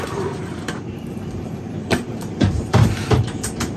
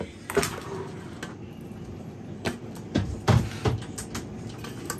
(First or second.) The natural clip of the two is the second